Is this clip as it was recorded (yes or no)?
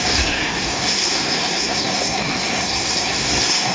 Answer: no